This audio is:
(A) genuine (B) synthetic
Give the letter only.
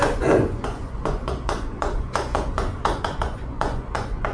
B